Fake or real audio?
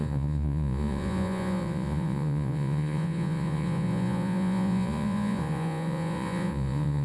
fake